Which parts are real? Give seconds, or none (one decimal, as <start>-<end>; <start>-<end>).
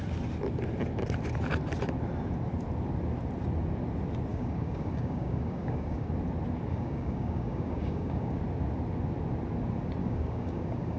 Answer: 0.0-4.3; 6.1-6.7; 8.4-10.0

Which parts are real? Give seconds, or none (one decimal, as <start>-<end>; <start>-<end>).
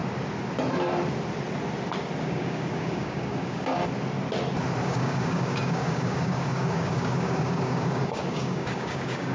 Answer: 0.0-2.2; 3.8-4.8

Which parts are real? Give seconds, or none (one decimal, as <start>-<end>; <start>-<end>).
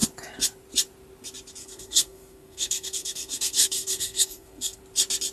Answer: 0.0-1.6; 4.8-5.3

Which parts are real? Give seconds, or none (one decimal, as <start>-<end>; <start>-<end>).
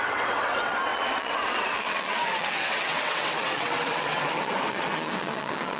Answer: none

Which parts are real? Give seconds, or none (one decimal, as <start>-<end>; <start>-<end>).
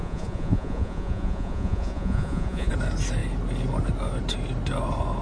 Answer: 2.7-5.2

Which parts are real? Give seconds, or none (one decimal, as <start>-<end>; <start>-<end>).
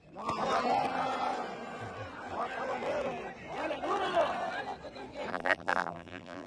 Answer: 0.0-5.3